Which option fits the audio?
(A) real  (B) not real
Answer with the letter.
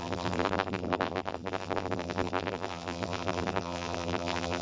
B